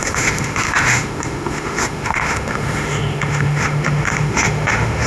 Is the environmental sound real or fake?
fake